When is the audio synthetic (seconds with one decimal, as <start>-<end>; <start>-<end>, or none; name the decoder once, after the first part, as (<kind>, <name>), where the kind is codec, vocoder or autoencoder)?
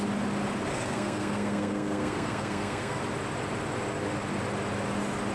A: 0.7-3.0 (codec, SNAC)